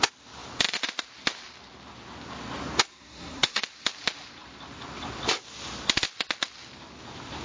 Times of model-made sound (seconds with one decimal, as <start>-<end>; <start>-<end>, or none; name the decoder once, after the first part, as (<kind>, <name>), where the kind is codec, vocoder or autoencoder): 2.9-3.6 (codec, SNAC)